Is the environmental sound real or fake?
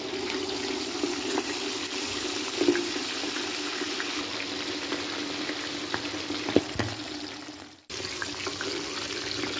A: real